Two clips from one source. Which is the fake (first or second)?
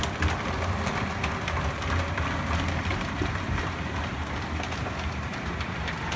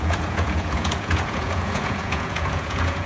second